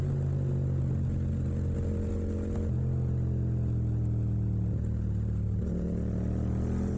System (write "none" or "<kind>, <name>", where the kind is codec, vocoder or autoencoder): none